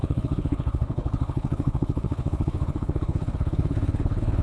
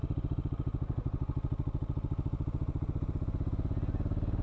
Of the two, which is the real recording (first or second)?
second